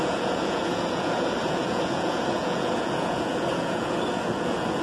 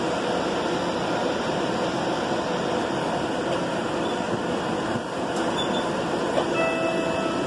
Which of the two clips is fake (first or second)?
first